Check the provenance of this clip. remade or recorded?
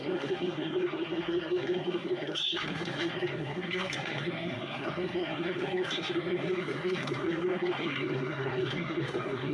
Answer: remade